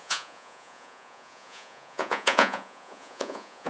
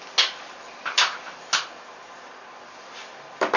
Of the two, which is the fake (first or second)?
first